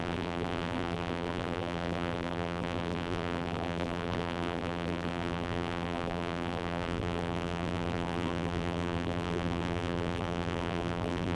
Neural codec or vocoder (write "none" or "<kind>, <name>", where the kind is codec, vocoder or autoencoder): vocoder, BigVGAN v2